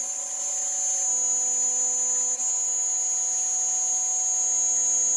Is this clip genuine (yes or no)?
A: yes